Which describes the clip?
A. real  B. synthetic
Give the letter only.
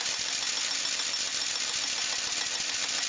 A